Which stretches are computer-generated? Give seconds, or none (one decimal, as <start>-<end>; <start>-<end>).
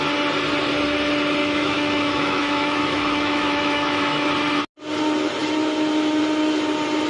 1.4-4.3